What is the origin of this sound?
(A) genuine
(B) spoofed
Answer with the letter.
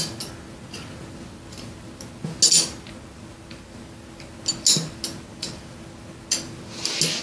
A